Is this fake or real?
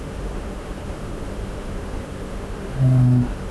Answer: fake